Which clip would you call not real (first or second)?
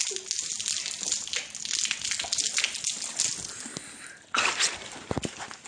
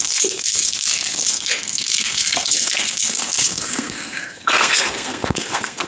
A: second